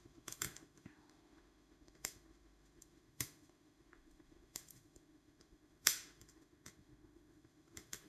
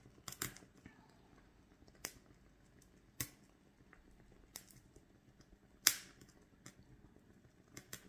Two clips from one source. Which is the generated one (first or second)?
first